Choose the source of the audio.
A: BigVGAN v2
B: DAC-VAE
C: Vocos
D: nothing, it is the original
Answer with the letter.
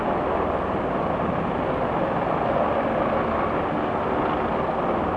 D